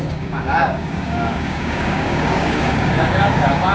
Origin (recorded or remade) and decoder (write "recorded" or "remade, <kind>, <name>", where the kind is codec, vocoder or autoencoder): remade, codec, DAC